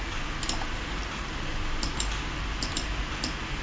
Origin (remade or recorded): recorded